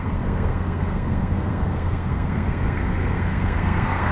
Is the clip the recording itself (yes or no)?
no